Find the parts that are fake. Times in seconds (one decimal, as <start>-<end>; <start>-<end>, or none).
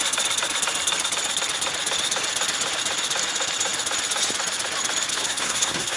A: 5.1-6.0